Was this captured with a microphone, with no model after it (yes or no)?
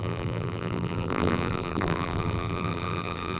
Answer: no